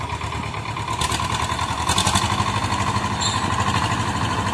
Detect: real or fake real